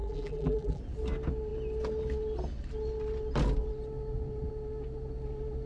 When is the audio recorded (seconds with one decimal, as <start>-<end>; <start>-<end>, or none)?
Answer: 0.8-5.7